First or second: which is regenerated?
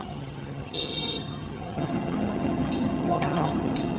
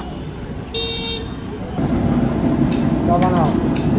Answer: first